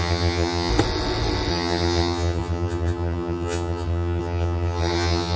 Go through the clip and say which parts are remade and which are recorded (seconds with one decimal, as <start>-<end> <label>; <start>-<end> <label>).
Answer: 0.0-0.7 remade; 0.7-1.5 recorded; 1.5-5.4 remade